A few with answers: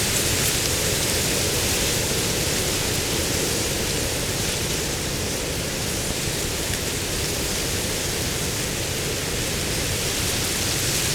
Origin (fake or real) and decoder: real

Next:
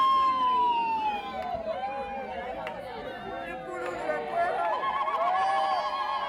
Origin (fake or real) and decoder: real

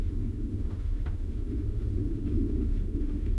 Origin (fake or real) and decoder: fake, autoencoder, DAC-VAE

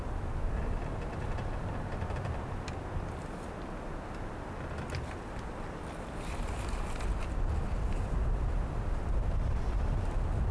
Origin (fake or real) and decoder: real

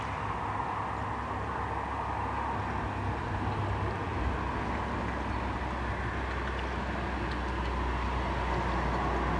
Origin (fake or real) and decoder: real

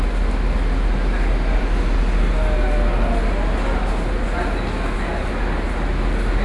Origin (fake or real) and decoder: real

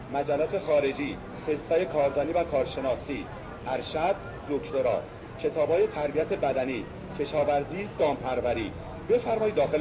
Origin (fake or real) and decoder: real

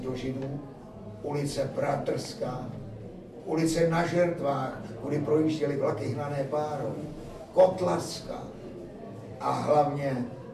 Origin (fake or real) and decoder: real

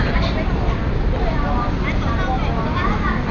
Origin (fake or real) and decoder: real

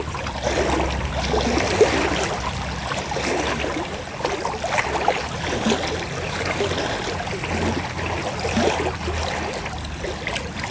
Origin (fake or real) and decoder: real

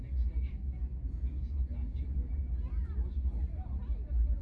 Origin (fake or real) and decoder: real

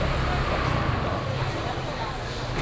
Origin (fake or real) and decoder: real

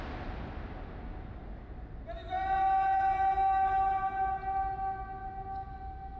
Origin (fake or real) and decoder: real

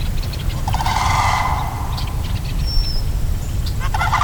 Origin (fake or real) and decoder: fake, vocoder, BigVGAN v2